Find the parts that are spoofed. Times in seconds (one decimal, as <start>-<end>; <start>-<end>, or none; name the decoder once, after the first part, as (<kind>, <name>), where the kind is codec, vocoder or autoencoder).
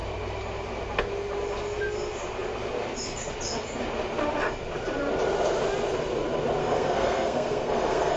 6.6-8.2 (codec, SNAC)